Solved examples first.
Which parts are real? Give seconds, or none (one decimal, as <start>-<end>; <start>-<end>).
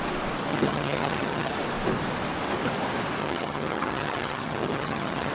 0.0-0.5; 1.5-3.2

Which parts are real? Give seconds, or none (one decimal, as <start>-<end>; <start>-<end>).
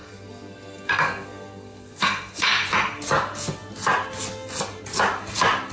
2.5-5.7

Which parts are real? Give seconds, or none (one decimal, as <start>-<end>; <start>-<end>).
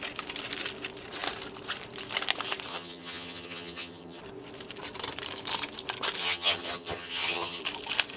0.0-2.7; 4.2-6.2; 7.6-8.2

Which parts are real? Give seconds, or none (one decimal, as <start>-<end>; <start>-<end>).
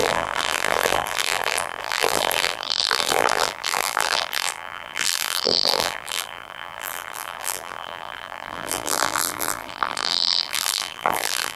none